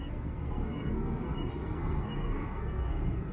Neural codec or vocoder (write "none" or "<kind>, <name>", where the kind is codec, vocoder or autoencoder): codec, SNAC